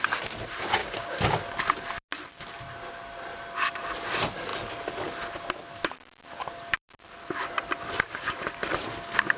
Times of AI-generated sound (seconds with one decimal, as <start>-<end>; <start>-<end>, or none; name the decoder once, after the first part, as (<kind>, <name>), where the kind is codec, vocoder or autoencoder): 0.8-1.4 (codec, DAC)